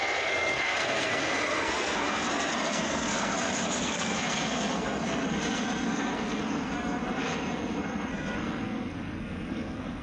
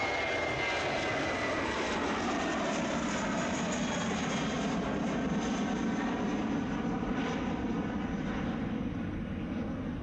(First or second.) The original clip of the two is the second